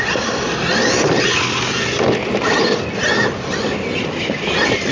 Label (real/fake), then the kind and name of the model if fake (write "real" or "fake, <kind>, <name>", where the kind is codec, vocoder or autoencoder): real